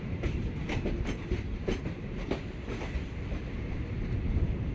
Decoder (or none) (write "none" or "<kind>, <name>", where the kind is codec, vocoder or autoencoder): none